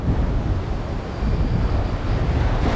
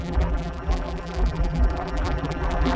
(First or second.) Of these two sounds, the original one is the first